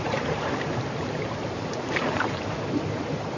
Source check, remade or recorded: remade